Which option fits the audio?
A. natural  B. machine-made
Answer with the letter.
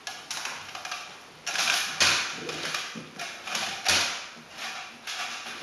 A